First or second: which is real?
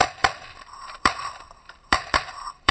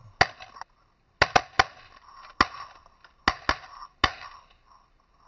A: second